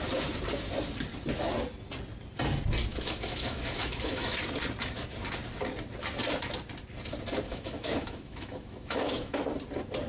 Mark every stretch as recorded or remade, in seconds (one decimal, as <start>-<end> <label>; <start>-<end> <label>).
0.0-2.9 recorded; 2.9-4.4 remade; 4.4-7.5 recorded; 7.5-9.4 remade; 9.4-10.1 recorded